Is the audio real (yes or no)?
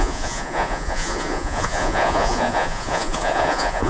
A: no